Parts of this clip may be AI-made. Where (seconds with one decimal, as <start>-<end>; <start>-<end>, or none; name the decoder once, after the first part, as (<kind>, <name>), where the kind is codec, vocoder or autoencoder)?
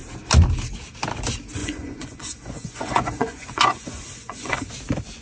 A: 1.6-4.7 (vocoder, Vocos)